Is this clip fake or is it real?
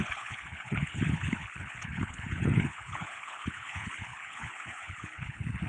fake